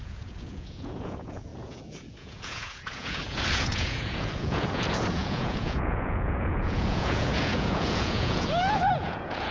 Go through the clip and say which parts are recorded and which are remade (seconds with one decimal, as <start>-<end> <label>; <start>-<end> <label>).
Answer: 0.0-9.5 remade